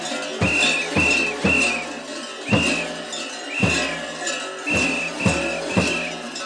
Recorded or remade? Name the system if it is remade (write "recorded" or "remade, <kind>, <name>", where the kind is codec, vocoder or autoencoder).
recorded